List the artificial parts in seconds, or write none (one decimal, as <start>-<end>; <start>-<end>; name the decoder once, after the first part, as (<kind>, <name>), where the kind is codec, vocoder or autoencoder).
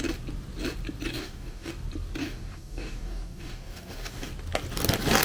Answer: 1.1-1.7 (codec, DAC); 2.2-4.3